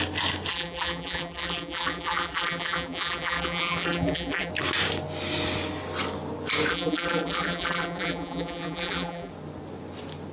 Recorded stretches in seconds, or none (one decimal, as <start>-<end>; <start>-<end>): 0.0-0.5; 4.5-6.7; 9.3-10.3